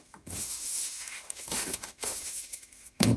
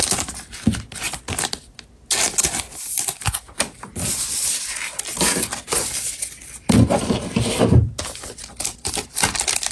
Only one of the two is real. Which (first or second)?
second